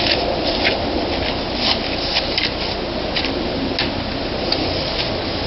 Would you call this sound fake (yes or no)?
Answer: no